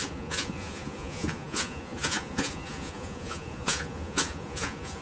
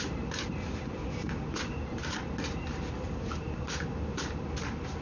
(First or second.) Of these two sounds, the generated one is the first